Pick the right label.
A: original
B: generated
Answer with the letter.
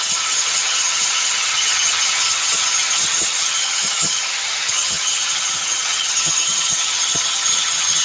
B